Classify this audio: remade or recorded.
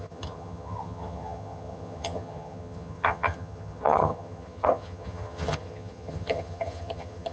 remade